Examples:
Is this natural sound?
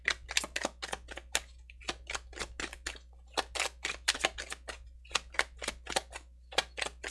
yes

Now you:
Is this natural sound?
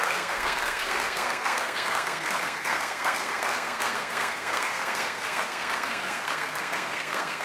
no